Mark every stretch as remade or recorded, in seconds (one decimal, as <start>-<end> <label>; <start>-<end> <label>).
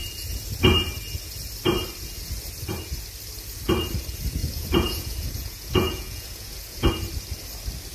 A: 0.0-4.4 recorded; 4.4-6.9 remade; 6.9-7.9 recorded